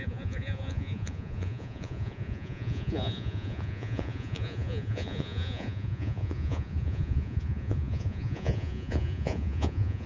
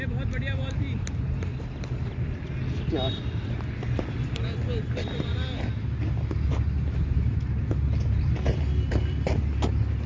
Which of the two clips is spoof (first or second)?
first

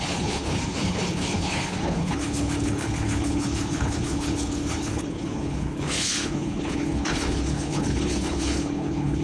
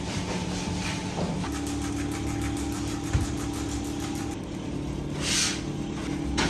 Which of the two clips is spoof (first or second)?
first